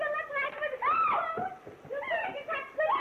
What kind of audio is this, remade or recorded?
recorded